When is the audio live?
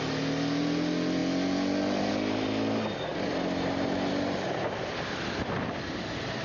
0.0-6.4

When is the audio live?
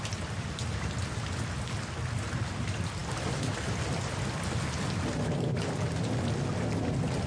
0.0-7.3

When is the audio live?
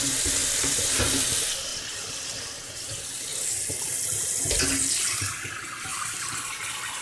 0.0-0.4; 1.0-1.7; 2.9-5.9; 6.6-7.0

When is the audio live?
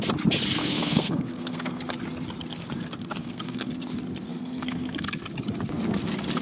0.0-0.6; 1.8-3.2; 3.7-4.3; 5.1-6.4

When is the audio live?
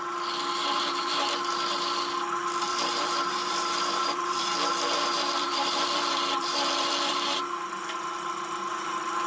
0.0-0.6; 1.2-2.7; 7.4-9.3